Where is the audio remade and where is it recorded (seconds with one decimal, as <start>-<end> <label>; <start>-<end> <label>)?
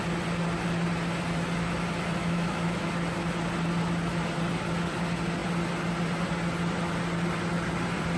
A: 0.0-2.2 recorded; 2.2-2.9 remade; 2.9-8.2 recorded